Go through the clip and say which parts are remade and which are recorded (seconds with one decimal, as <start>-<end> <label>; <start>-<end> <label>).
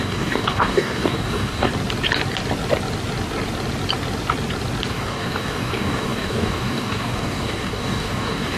0.0-1.7 remade; 1.7-4.9 recorded; 4.9-8.6 remade